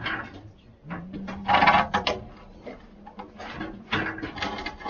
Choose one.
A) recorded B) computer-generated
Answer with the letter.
A